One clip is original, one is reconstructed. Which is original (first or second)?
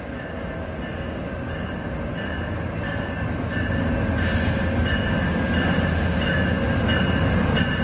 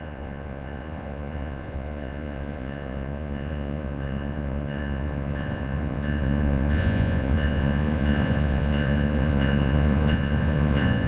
first